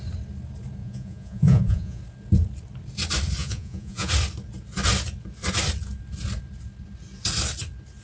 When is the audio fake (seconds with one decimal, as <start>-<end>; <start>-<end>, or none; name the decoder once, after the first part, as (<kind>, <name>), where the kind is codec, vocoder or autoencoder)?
0.8-2.0 (vocoder, Vocos); 3.4-4.1